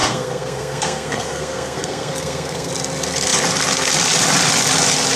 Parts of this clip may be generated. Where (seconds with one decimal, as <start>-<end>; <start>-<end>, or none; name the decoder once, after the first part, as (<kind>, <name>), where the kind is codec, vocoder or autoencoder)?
0.0-2.7 (codec, SNAC)